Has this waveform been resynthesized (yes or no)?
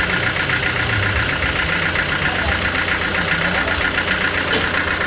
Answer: no